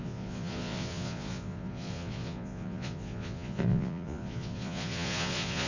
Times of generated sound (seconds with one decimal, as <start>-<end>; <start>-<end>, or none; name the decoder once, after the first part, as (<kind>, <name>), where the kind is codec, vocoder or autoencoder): 0.0-5.7 (vocoder, Vocos)